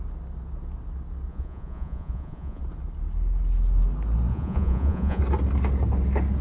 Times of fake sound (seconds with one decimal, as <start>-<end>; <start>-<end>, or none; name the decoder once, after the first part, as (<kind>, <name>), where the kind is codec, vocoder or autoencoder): 1.3-2.6 (vocoder, Vocos); 4.3-5.2